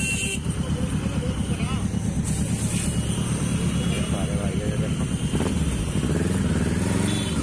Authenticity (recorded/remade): recorded